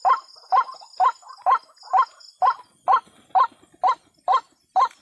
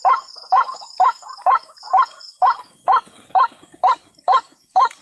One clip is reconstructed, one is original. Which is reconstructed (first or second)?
second